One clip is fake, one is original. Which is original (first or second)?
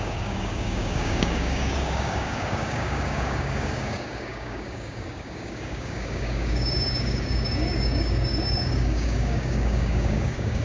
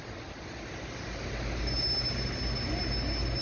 second